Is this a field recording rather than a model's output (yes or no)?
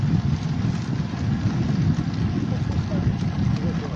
yes